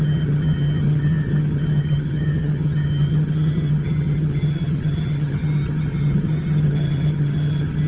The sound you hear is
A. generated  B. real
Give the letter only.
A